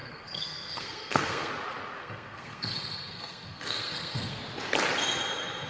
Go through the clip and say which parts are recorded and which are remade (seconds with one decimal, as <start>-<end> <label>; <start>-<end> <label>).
0.0-1.5 remade; 1.5-2.0 recorded; 2.0-4.4 remade; 4.4-5.7 recorded